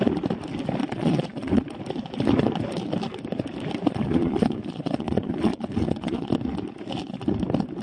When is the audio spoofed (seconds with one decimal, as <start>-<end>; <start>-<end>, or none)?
0.8-1.6; 3.9-6.3